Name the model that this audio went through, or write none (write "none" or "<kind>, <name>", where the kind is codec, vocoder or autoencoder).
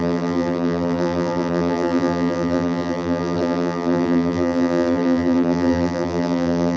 vocoder, BigVGAN v2